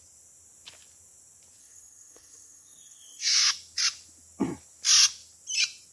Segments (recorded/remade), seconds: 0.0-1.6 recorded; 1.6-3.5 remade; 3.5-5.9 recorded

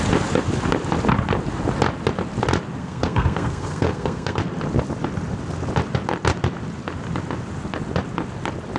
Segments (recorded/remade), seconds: 0.0-2.8 recorded; 2.8-4.4 remade; 4.4-8.8 recorded

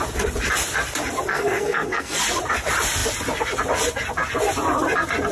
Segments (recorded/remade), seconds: 0.0-1.3 recorded; 1.3-2.2 remade; 2.2-5.3 recorded

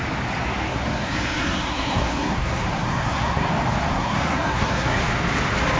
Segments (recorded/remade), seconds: 0.0-0.7 recorded; 0.7-3.5 remade; 3.5-3.9 recorded; 3.9-5.0 remade; 5.0-5.8 recorded

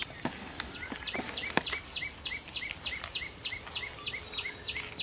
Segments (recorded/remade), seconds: 0.0-5.0 recorded

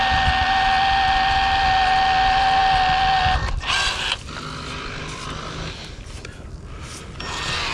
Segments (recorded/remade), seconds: 0.0-7.7 recorded